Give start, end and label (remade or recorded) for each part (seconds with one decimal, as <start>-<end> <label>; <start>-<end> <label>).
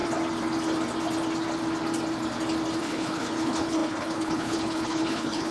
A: 0.0-2.8 recorded; 2.8-5.5 remade